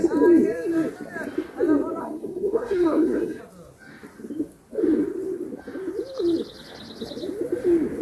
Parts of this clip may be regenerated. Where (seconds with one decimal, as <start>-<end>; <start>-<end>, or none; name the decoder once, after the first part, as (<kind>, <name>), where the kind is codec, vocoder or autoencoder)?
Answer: 2.0-3.4 (codec, SNAC)